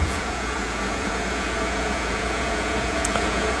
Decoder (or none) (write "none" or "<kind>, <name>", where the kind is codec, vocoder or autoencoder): vocoder, Vocos